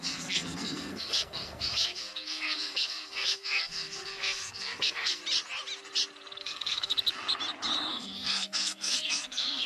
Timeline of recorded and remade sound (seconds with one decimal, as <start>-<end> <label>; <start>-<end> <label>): 0.0-5.2 remade; 5.2-6.4 recorded; 6.4-6.9 remade; 6.9-7.9 recorded; 7.9-9.7 remade